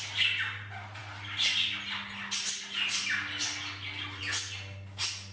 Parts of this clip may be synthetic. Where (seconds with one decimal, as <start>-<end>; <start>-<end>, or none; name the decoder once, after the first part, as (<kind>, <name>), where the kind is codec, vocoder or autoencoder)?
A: none